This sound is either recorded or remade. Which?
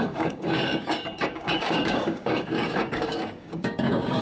remade